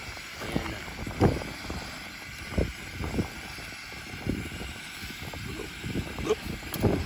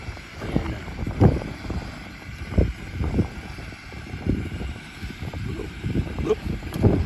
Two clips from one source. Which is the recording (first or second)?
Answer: first